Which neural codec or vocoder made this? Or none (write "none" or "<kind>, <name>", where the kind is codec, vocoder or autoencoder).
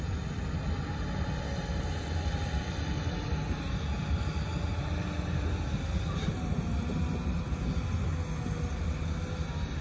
none